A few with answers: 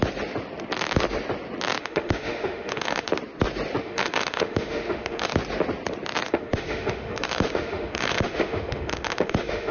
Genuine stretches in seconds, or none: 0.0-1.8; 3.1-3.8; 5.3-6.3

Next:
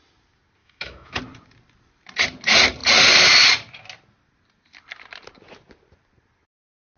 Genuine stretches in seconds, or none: 0.0-0.6; 1.2-7.0

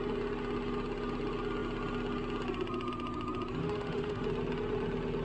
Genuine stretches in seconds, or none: 0.0-3.6; 4.2-5.2

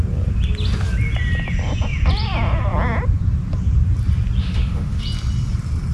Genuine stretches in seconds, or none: 0.0-4.4; 5.0-5.9

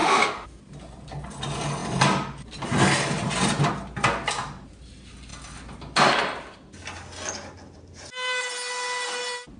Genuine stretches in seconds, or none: 0.6-9.6